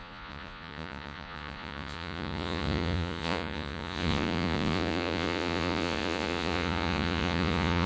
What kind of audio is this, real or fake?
fake